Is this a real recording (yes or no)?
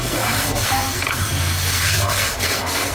no